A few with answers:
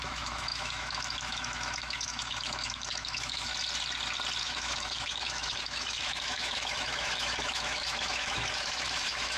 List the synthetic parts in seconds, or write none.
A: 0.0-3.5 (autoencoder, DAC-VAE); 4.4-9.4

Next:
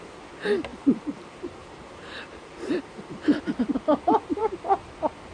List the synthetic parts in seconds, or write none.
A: 0.7-3.4 (vocoder, BigVGAN v2)

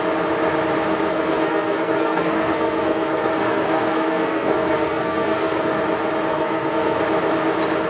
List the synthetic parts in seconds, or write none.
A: 1.1-5.8 (codec, SNAC); 6.3-7.0

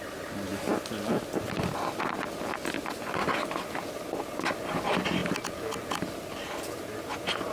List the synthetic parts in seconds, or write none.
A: none

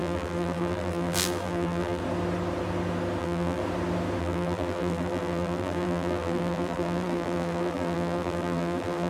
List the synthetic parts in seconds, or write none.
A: 0.0-2.0 (vocoder, BigVGAN v2); 3.2-3.6; 4.2-9.1

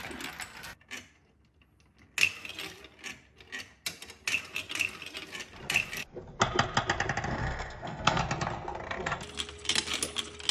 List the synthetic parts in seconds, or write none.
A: 7.3-8.2 (codec, SNAC)